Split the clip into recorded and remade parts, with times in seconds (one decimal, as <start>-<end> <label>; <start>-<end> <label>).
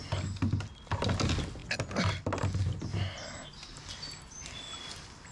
0.0-5.3 recorded